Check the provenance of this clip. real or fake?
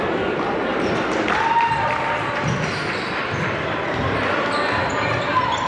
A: real